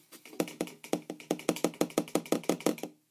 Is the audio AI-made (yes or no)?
no